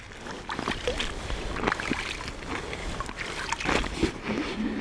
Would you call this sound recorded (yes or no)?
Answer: yes